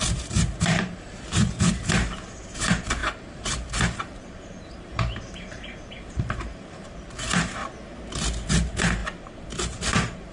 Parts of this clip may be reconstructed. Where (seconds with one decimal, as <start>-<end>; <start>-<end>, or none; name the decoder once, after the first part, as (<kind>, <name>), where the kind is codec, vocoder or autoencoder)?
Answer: 0.0-7.6 (vocoder, BigVGAN v2); 8.5-10.3